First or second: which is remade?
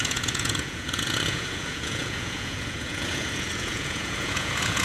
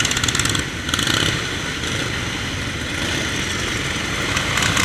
first